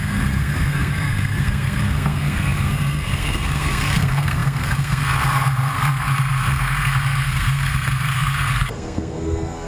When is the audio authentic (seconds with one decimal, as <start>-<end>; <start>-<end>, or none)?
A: none